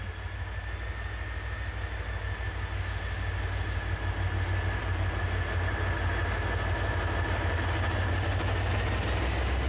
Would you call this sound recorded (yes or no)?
yes